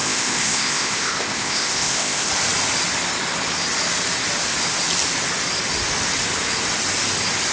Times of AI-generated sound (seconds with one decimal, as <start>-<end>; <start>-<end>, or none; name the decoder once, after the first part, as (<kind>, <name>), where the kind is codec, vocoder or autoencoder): 0.0-2.3 (codec, ZipCodec)